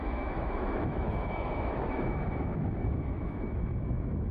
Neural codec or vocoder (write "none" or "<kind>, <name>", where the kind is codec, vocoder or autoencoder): autoencoder, DAC-VAE